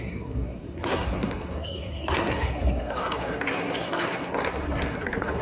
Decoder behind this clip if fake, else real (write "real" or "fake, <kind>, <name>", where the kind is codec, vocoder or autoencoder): fake, codec, SNAC